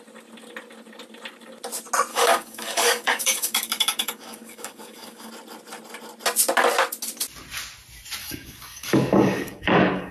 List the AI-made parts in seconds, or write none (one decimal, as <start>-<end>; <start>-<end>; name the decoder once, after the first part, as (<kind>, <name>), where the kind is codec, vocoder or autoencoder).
2.1-5.3 (codec, DAC); 8.2-10.1